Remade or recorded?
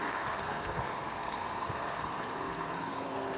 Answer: remade